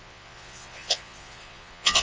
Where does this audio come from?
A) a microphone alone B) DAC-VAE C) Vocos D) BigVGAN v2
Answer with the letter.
C